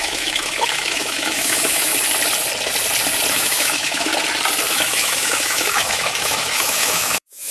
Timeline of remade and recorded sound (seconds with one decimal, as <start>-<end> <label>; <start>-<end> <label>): 0.0-1.9 remade; 1.9-3.3 recorded; 3.3-4.1 remade; 4.1-4.7 recorded; 4.7-7.5 remade